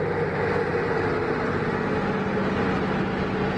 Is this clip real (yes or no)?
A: yes